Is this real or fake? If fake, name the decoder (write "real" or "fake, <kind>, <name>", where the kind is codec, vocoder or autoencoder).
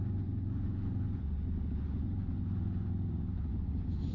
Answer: fake, vocoder, Vocos